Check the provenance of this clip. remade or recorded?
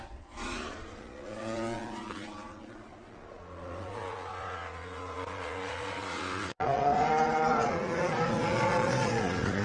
remade